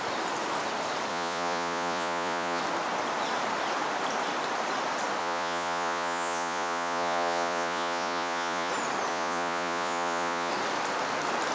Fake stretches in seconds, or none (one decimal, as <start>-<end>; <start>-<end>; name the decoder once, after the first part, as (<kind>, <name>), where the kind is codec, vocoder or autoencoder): 1.1-2.6 (vocoder, Vocos); 5.2-8.7; 9.1-10.5